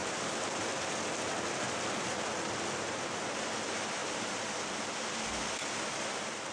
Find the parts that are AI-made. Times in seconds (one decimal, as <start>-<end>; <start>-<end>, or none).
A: 0.0-0.8; 4.0-4.5